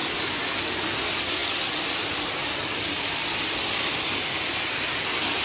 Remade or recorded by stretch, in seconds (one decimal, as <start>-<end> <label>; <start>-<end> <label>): 0.0-5.4 recorded

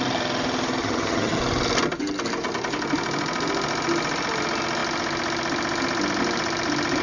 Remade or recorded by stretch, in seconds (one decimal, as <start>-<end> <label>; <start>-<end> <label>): 0.0-0.8 recorded; 0.8-1.4 remade; 1.4-7.0 recorded

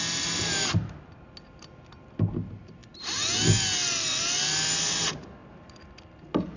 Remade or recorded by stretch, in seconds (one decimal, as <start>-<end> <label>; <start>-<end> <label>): 0.0-6.6 recorded

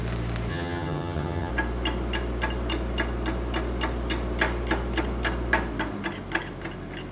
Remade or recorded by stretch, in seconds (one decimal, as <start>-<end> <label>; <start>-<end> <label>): 0.0-0.5 recorded; 0.5-1.5 remade; 1.5-7.1 recorded

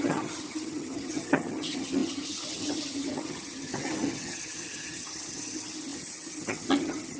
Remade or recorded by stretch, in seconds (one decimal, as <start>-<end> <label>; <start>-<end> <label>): 0.0-7.2 remade

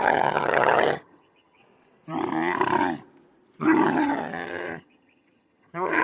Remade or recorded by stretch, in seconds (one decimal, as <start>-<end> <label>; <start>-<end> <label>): 0.0-1.6 remade; 1.6-3.6 recorded; 3.6-6.0 remade